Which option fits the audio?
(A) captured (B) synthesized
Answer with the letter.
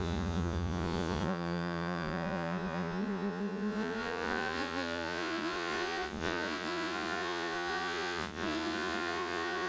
B